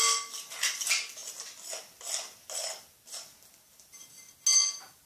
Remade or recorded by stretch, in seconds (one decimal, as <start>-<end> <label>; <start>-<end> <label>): 0.0-5.1 recorded